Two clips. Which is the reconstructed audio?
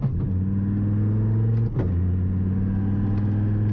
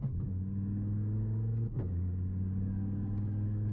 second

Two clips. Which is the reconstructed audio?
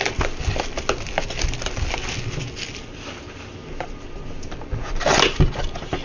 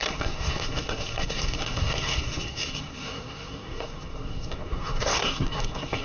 second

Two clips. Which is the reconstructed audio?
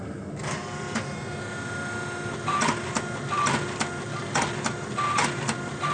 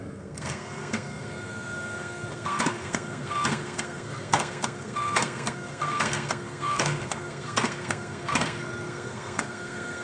second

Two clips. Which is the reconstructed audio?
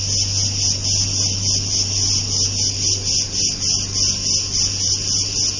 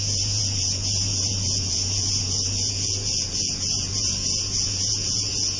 second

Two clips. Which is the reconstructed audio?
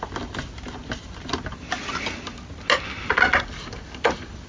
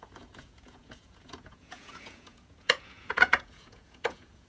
second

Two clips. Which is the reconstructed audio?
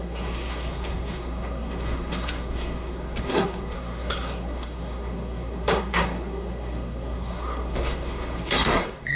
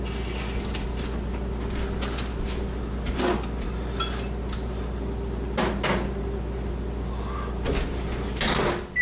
first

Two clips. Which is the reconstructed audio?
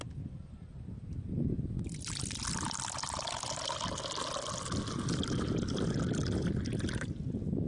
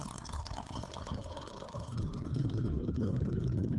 second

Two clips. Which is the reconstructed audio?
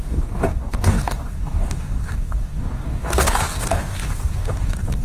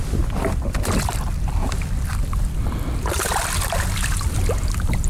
first